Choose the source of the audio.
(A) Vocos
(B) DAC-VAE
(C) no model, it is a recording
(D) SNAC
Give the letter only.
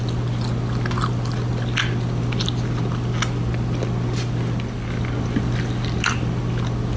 C